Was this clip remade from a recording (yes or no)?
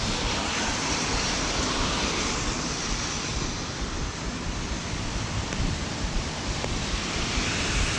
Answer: no